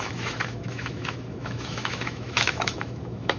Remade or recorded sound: remade